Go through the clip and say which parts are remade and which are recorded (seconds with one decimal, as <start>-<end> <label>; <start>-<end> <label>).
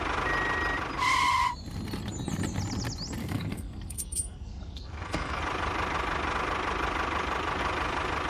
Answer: 0.0-3.2 recorded; 3.2-5.4 remade; 5.4-8.3 recorded